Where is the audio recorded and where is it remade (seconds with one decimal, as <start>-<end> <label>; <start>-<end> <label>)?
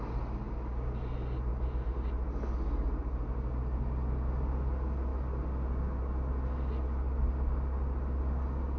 0.0-8.8 recorded